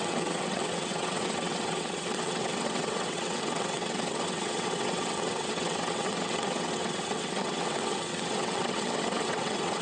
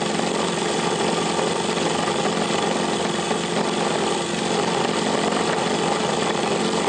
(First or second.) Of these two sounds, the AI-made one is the first